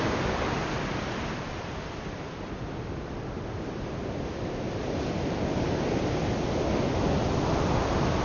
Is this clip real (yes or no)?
yes